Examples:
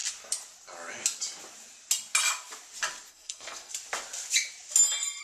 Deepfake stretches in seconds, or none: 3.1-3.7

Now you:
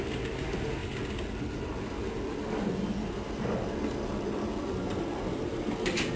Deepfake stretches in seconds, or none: none

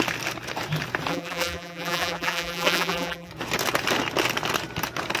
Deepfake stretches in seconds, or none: 1.1-3.3

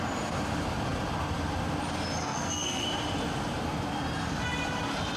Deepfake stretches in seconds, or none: 2.2-2.8

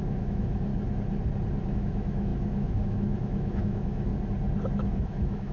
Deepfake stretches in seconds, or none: 0.0-0.7; 1.7-4.1; 4.7-5.5

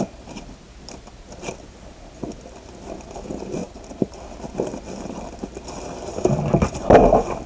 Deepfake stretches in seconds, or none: 3.6-4.2